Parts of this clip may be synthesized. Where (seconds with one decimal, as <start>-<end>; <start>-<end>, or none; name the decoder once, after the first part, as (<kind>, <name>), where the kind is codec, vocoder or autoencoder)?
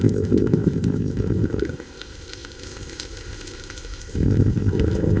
0.0-5.2 (codec, ZipCodec)